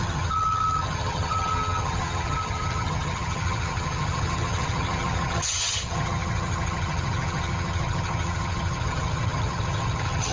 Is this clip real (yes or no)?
no